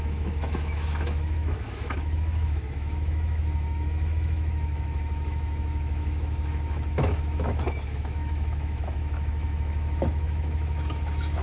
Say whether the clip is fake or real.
fake